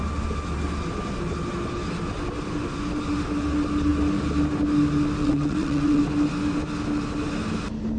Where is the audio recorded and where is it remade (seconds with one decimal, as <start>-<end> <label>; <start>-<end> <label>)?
0.0-5.2 recorded; 5.2-6.0 remade; 6.0-8.0 recorded